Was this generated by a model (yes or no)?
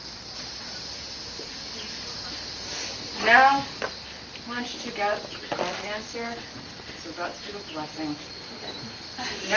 no